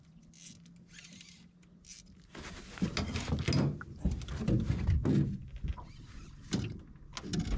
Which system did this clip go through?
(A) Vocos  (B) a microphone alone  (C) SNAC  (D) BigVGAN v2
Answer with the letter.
B